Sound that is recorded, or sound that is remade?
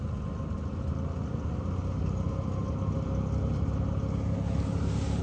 recorded